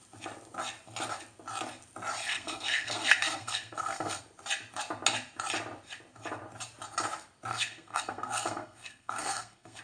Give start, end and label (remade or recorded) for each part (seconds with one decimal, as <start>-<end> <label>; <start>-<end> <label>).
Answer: 0.0-2.2 recorded; 2.2-4.2 remade; 4.2-7.5 recorded; 7.5-9.8 remade